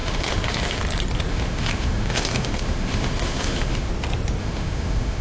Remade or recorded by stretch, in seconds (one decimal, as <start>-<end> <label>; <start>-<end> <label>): 0.0-0.8 remade; 0.8-1.3 recorded; 1.3-3.9 remade; 3.9-4.4 recorded; 4.4-5.2 remade